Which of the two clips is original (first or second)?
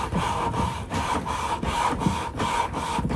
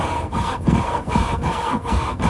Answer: first